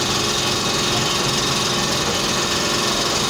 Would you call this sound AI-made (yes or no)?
no